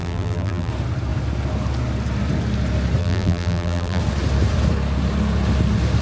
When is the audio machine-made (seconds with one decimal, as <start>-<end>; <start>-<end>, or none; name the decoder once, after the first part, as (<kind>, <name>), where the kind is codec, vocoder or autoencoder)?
0.0-0.7 (vocoder, BigVGAN v2); 3.0-4.0